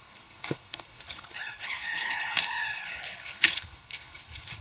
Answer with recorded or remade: remade